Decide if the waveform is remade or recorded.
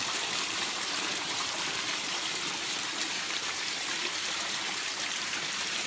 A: remade